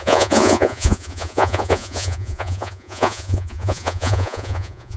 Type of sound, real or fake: fake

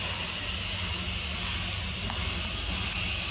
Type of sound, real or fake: real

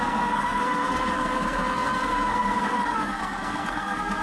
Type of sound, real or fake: fake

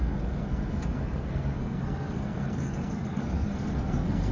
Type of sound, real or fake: fake